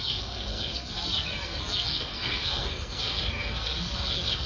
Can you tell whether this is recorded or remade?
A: remade